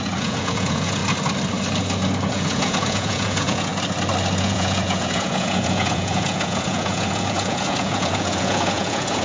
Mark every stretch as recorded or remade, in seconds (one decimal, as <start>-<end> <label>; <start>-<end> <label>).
0.0-1.0 remade; 1.0-2.3 recorded; 2.3-3.7 remade; 3.7-4.4 recorded; 4.4-9.2 remade